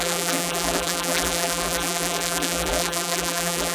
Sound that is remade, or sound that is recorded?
remade